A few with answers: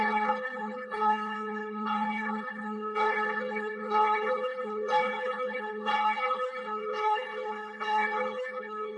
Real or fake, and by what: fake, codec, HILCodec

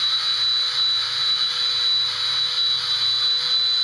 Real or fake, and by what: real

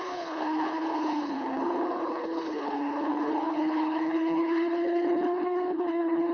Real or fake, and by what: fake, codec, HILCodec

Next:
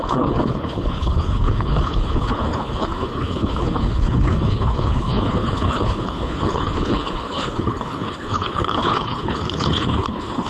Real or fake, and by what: fake, codec, HILCodec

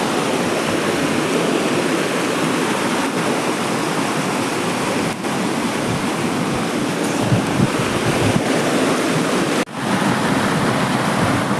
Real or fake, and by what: real